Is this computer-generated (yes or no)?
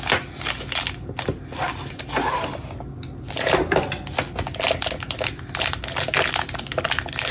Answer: no